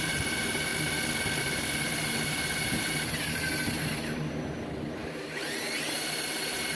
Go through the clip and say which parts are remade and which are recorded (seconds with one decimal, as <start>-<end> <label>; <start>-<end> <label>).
0.0-0.7 remade; 0.7-1.4 recorded; 1.4-6.7 remade

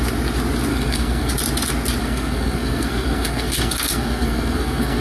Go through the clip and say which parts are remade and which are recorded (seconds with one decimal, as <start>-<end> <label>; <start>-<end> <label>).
0.0-0.7 recorded; 0.7-1.3 remade; 1.3-2.0 recorded; 2.0-5.0 remade

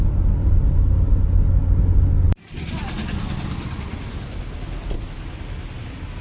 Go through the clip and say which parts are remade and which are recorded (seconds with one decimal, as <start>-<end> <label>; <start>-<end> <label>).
0.0-6.2 recorded

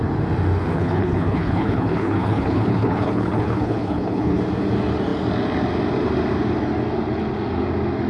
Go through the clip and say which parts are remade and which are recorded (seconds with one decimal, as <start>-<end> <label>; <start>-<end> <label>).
0.0-0.7 recorded; 0.7-4.4 remade; 4.4-8.1 recorded

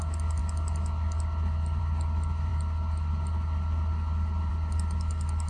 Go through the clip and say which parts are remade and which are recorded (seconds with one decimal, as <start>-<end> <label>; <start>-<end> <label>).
0.0-5.5 recorded

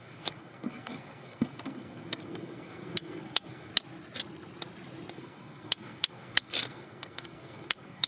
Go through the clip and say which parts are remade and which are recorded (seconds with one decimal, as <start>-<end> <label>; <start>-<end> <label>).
0.0-3.7 remade; 3.7-5.1 recorded; 5.1-8.1 remade

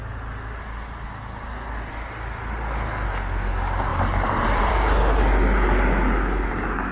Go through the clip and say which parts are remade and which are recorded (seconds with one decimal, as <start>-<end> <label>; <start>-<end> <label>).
0.0-3.9 recorded; 3.9-4.7 remade; 4.7-6.9 recorded